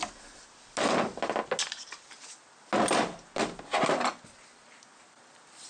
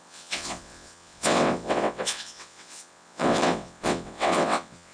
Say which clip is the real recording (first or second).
first